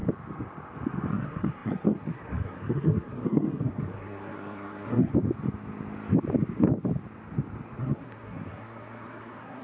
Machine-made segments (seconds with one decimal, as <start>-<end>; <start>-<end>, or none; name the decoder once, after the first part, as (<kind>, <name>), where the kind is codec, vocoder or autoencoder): 1.1-5.1 (codec, SNAC); 7.8-9.6